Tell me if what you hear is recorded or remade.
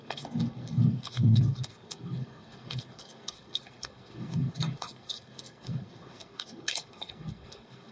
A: remade